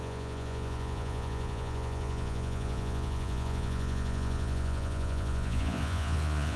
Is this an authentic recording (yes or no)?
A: no